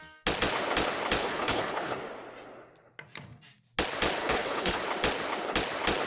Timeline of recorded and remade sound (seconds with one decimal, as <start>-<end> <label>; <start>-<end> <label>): 0.0-1.2 recorded; 1.2-1.9 remade; 1.9-4.2 recorded; 4.2-4.8 remade; 4.8-6.1 recorded

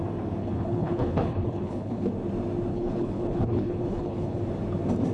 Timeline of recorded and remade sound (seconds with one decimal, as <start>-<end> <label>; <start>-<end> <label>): 0.0-0.4 recorded; 0.4-2.1 remade; 2.1-2.7 recorded; 2.7-4.4 remade; 4.4-5.1 recorded

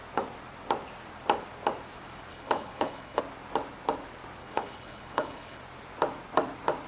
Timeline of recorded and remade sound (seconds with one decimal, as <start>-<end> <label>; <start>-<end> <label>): 0.0-2.3 recorded; 2.3-3.2 remade; 3.2-4.4 recorded; 4.4-5.6 remade; 5.6-6.9 recorded

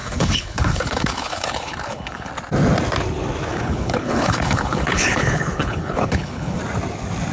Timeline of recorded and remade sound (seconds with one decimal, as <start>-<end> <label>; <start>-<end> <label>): 0.0-2.3 remade; 2.3-3.5 recorded; 3.5-6.6 remade; 6.6-7.3 recorded

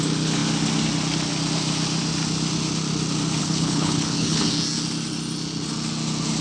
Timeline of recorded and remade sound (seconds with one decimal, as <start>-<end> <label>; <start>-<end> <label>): 0.0-3.4 recorded; 3.4-4.5 remade; 4.5-6.4 recorded

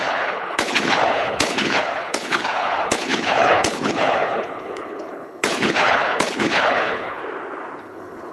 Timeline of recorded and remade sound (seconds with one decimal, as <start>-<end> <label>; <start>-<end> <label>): 0.0-7.2 remade; 7.2-7.8 recorded; 7.8-8.3 remade

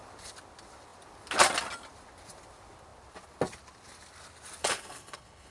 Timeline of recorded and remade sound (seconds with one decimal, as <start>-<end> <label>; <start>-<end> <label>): 0.0-4.6 recorded; 4.6-5.5 remade